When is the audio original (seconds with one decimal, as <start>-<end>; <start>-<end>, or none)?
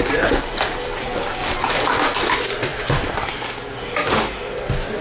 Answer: 0.0-5.0